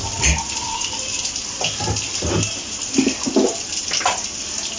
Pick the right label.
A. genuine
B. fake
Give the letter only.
A